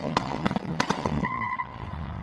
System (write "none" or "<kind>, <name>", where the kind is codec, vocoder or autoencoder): vocoder, WaveNeXt